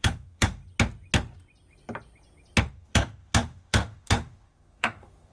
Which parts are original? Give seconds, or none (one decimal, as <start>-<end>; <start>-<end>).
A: 0.6-2.7